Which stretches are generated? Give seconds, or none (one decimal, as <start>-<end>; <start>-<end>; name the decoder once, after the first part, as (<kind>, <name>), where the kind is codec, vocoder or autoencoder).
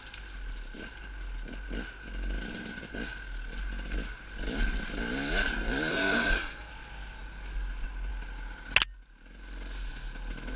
5.9-6.7 (codec, SNAC)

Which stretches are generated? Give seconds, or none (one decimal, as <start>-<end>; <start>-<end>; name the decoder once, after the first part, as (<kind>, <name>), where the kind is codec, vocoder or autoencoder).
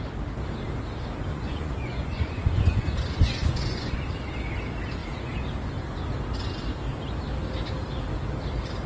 1.3-4.0 (vocoder, Vocos)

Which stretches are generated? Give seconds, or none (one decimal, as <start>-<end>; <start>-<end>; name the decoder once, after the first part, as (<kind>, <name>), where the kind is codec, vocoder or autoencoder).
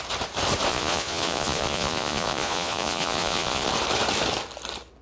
0.7-3.7 (vocoder, Vocos)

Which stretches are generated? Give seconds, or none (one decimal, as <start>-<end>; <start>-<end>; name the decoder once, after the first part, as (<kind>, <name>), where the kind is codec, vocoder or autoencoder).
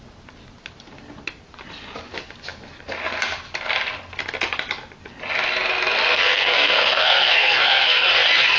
6.1-8.1 (codec, SNAC)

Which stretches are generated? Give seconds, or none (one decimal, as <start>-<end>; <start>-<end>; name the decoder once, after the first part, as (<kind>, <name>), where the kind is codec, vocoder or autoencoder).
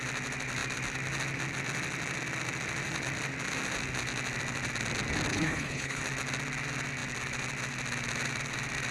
5.3-6.0 (codec, HILCodec)